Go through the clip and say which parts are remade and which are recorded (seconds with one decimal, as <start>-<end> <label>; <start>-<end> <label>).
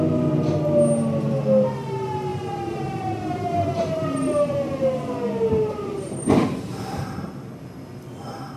0.0-2.3 recorded; 2.3-7.3 remade; 7.3-8.6 recorded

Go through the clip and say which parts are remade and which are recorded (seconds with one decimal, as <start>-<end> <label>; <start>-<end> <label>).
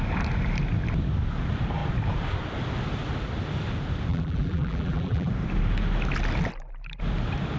0.0-4.1 recorded; 4.1-5.3 remade; 5.3-7.6 recorded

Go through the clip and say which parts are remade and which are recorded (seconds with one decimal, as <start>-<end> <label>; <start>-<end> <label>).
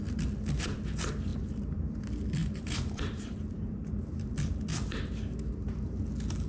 0.0-1.3 recorded; 1.3-2.0 remade; 2.0-2.4 recorded; 2.4-4.3 remade; 4.3-4.7 recorded; 4.7-6.0 remade; 6.0-6.5 recorded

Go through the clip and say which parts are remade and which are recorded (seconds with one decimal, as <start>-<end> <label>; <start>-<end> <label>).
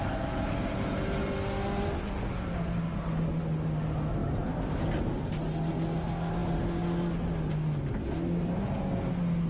0.0-4.2 recorded; 4.2-5.4 remade; 5.4-9.5 recorded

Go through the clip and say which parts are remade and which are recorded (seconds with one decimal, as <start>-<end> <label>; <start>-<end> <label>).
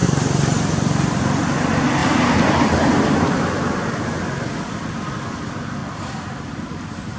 0.0-1.2 remade; 1.2-2.0 recorded; 2.0-3.9 remade; 3.9-5.8 recorded; 5.8-7.2 remade